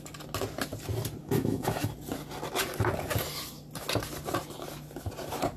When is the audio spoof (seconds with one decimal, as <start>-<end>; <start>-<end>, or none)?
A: 1.2-1.9